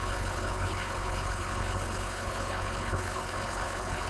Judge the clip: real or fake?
fake